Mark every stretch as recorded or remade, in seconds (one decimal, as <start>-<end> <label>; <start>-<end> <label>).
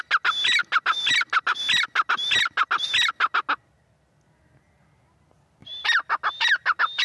0.0-7.0 recorded